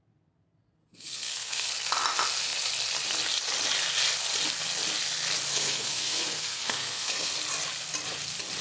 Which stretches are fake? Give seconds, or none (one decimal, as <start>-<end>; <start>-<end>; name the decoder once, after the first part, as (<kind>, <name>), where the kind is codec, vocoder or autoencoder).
0.8-1.7 (codec, SNAC); 5.5-7.3